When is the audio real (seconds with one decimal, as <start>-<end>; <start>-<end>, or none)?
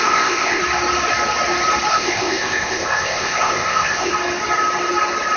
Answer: 0.6-1.9; 4.1-5.4